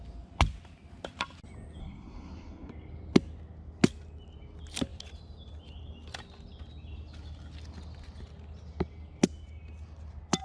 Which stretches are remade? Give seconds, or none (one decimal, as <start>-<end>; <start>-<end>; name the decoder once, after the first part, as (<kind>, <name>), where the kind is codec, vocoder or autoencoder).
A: 1.8-2.7 (codec, SNAC)